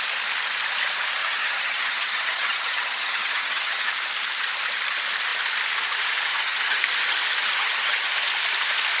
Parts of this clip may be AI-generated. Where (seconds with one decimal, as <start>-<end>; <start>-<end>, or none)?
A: 1.2-3.9; 6.3-6.8; 7.4-8.1